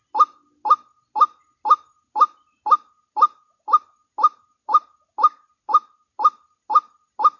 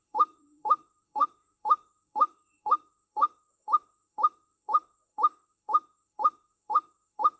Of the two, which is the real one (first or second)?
first